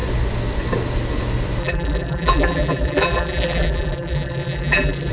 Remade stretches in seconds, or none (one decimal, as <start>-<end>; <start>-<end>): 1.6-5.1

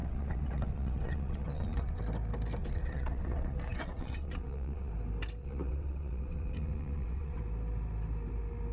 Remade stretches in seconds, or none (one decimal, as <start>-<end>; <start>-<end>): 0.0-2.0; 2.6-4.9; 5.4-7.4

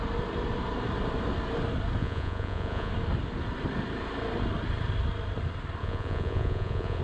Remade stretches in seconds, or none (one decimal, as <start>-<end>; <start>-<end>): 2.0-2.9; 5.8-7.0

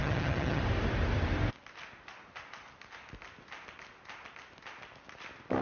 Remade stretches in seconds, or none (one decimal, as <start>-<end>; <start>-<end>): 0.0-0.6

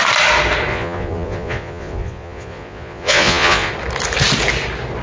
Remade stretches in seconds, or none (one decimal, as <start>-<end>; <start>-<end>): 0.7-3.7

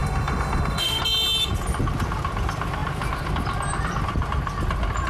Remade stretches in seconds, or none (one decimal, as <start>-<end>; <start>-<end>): 0.0-1.0